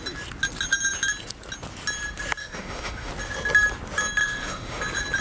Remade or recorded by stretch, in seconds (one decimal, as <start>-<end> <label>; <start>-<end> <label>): 0.0-2.4 recorded; 2.4-3.1 remade; 3.1-4.2 recorded; 4.2-4.8 remade; 4.8-5.2 recorded